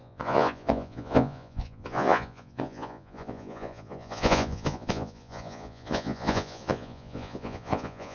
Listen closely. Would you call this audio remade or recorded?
remade